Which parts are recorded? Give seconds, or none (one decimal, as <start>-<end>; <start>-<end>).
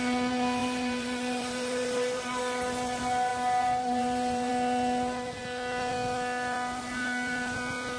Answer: 0.0-0.6; 2.4-3.3; 4.5-8.0